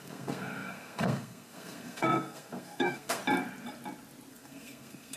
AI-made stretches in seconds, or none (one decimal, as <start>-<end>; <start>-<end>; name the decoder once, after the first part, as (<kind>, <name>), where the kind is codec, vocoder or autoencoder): 0.0-3.2 (codec, SNAC); 4.3-5.2